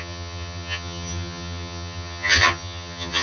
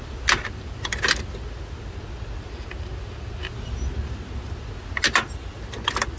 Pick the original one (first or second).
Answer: second